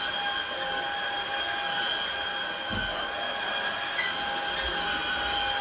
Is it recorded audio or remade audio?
recorded